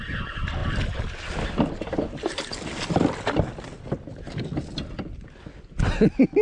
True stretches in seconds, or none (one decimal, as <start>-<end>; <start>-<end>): 0.0-0.6; 4.4-6.4